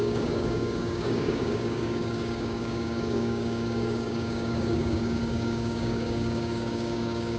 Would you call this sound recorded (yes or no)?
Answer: no